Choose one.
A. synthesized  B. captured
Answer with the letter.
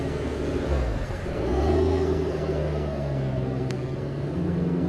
A